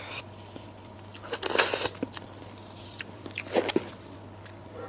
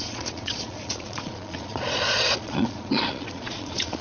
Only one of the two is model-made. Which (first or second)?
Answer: second